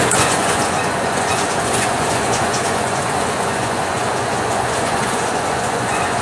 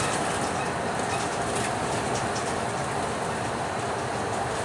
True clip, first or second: second